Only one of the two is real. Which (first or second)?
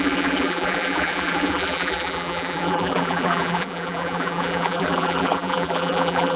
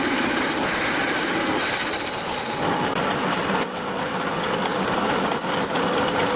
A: second